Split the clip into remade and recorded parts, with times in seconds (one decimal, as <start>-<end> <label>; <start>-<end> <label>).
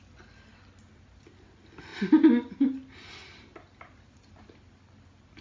0.0-5.4 recorded